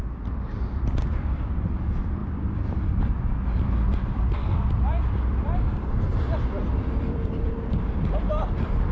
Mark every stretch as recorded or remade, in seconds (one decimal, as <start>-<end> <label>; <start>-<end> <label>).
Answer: 0.0-8.9 remade